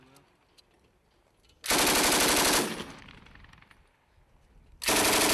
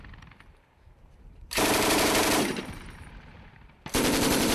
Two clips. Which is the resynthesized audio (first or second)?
second